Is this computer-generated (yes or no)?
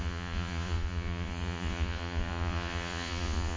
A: yes